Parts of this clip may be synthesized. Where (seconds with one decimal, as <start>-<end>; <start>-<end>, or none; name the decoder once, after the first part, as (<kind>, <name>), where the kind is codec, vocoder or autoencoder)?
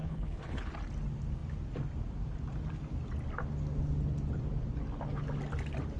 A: 0.0-0.7 (codec, HILCodec)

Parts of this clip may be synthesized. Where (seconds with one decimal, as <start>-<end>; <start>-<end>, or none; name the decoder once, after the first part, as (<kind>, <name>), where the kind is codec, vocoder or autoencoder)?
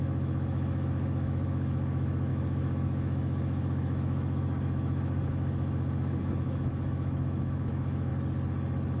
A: 0.0-8.1 (autoencoder, DAC-VAE)